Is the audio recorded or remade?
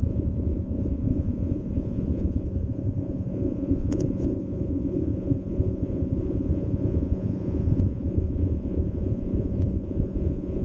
remade